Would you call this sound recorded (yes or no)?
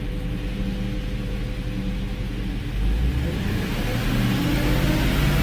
yes